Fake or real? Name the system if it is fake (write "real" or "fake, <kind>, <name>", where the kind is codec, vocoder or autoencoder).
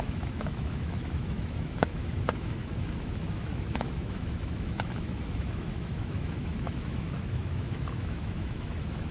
fake, autoencoder, DAC-VAE